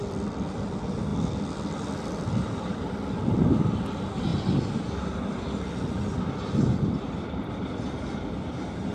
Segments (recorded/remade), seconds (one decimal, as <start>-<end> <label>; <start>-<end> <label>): 0.0-8.9 recorded